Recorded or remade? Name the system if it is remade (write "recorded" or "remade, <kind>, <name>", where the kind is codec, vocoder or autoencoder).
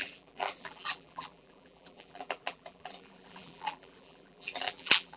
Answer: remade, vocoder, BigVGAN v2